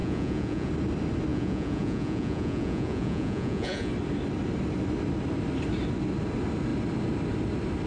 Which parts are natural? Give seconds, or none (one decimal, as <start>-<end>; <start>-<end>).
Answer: 0.7-1.3; 3.9-7.9